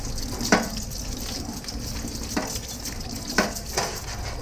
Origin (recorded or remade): recorded